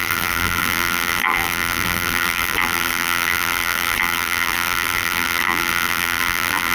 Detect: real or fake fake